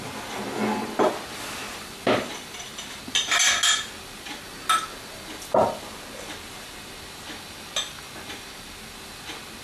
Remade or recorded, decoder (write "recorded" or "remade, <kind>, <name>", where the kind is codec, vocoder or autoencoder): recorded